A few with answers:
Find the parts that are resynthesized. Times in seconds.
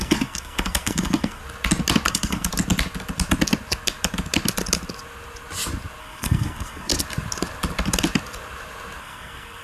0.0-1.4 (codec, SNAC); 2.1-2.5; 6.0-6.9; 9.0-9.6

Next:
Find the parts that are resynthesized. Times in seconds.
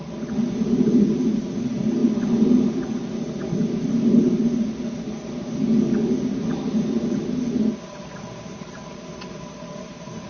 none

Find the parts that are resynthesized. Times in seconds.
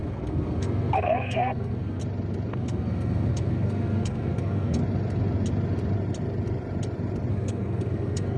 0.0-2.0 (codec, SNAC); 2.5-4.8; 7.3-8.4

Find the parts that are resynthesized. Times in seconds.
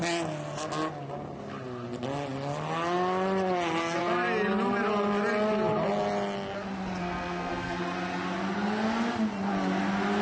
7.0-7.8 (codec, SNAC)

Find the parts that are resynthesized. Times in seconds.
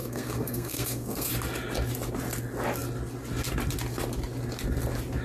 0.0-1.3 (codec, SNAC)